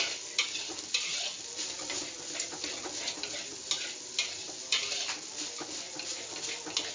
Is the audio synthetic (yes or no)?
no